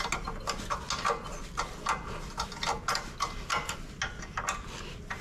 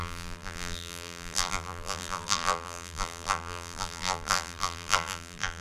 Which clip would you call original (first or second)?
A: first